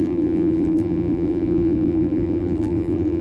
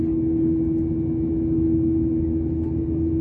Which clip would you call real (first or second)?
second